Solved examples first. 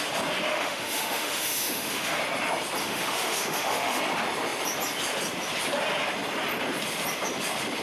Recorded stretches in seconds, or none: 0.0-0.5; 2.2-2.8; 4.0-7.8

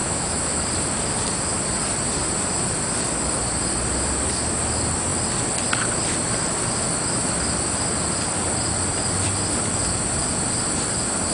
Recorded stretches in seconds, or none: 0.6-11.3

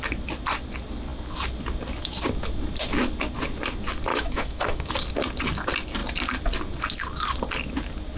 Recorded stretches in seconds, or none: 0.0-4.1; 4.9-8.2

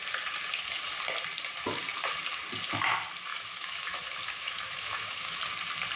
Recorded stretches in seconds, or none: 0.0-3.3; 5.4-6.0

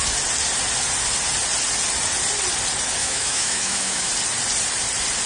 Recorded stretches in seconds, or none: 0.0-3.0; 4.1-5.3

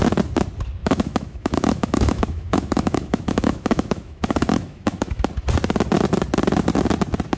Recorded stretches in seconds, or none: 0.0-0.8; 5.2-7.4

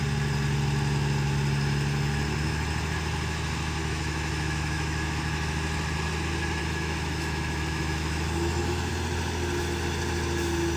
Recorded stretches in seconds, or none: 0.0-3.8; 5.2-6.6; 8.9-10.8

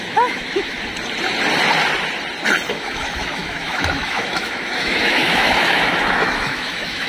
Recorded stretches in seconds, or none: 0.9-2.7